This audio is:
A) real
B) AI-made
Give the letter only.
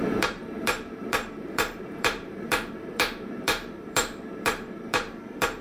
B